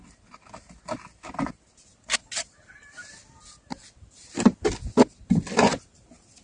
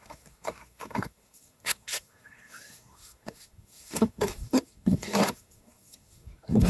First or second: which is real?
first